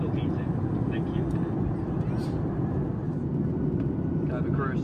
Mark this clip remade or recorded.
recorded